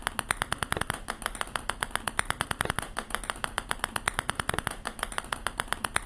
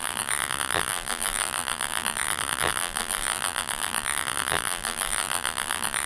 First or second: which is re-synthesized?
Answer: second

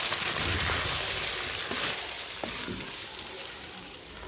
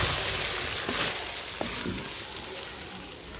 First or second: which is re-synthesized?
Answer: first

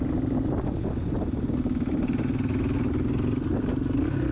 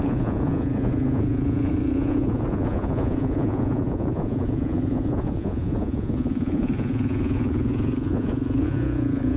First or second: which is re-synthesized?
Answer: second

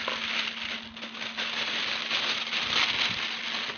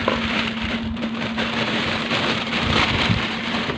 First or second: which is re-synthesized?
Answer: second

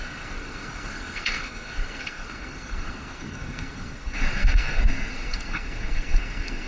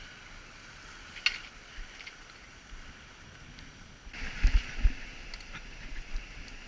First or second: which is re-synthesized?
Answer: first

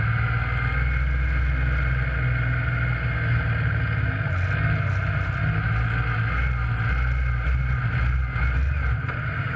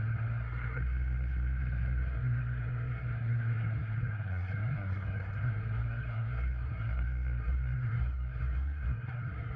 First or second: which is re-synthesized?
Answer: second